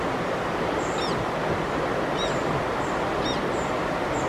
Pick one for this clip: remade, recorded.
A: recorded